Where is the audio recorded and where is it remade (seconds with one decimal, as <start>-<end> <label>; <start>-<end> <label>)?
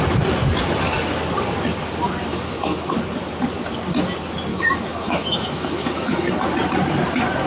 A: 0.0-2.3 recorded; 2.3-2.9 remade; 2.9-4.5 recorded; 4.5-6.3 remade; 6.3-7.5 recorded